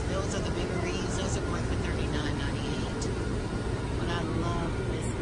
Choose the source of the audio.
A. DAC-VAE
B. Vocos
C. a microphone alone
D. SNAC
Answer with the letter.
C